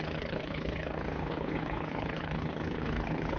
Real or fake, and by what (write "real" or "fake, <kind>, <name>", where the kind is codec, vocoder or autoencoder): fake, codec, HILCodec